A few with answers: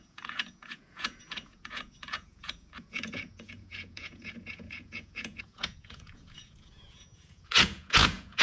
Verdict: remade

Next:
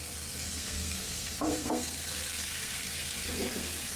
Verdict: remade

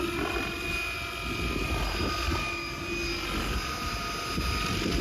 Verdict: recorded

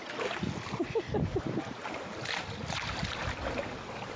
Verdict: recorded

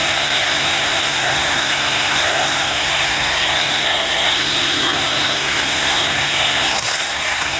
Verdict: remade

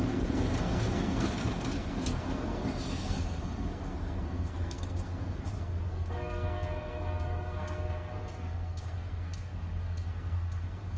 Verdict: remade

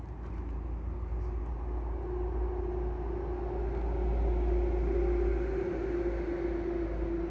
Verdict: recorded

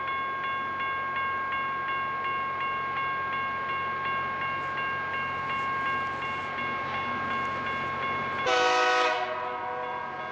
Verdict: recorded